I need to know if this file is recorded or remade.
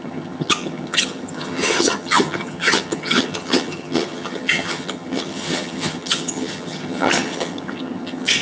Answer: remade